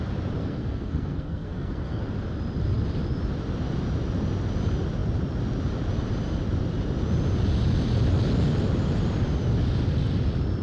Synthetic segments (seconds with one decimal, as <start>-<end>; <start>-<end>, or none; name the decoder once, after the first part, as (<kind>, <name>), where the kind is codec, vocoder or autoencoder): 0.4-2.0 (codec, SNAC)